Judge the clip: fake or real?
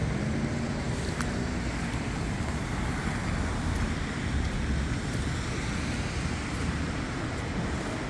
real